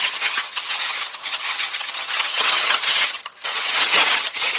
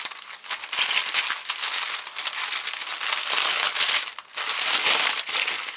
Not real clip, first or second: first